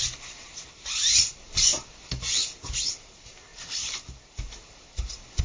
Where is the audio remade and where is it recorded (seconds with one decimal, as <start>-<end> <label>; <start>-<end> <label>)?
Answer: 0.0-1.7 remade; 1.7-2.9 recorded; 2.9-5.4 remade

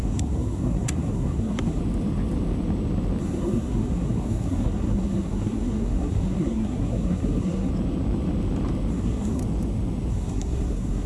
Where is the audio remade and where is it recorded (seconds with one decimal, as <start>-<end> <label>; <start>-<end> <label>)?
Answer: 0.0-1.8 remade; 1.8-3.2 recorded; 3.2-7.7 remade; 7.7-8.9 recorded; 8.9-9.4 remade; 9.4-10.1 recorded; 10.1-11.1 remade

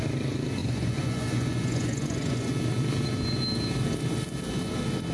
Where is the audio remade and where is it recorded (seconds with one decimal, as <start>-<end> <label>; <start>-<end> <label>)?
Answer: 0.0-0.6 recorded; 0.6-2.5 remade; 2.5-5.1 recorded

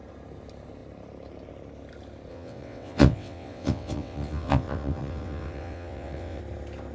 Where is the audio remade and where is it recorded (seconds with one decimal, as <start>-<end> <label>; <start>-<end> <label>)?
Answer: 0.0-2.3 recorded; 2.3-6.4 remade; 6.4-6.9 recorded

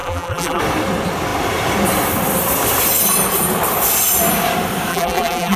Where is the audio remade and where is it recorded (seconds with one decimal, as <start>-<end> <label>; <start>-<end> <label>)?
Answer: 0.0-0.6 remade; 0.6-4.9 recorded; 4.9-5.6 remade

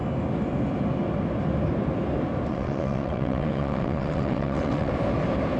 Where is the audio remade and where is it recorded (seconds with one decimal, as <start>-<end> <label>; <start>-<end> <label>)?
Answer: 0.0-2.5 recorded; 2.5-4.9 remade; 4.9-5.6 recorded

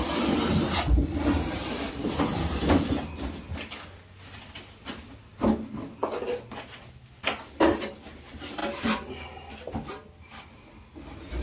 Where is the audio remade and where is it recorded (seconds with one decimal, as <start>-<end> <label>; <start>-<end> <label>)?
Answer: 0.0-2.6 remade; 2.6-4.3 recorded; 4.3-5.3 remade; 5.3-6.8 recorded; 6.8-11.4 remade